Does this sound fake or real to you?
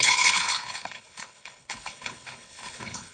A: fake